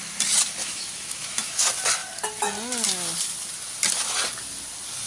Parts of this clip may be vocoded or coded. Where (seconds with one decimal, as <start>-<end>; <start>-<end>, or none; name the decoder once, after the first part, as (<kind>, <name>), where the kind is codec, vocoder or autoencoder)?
0.6-1.6 (autoencoder, DAC-VAE)